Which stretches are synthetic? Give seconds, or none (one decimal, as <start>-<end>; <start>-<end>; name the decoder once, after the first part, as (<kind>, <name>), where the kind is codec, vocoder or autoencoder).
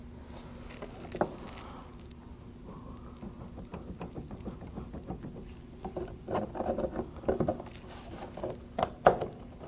none